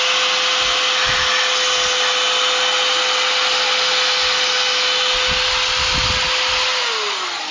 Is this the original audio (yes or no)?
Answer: yes